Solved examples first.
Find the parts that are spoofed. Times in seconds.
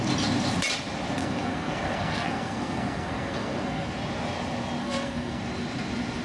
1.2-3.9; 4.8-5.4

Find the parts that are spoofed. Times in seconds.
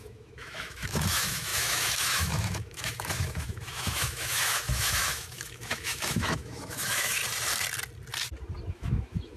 0.0-7.2; 8.7-9.4